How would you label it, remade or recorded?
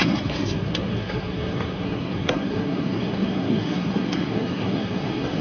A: remade